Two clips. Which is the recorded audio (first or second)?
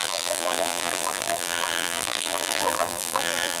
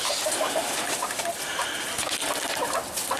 second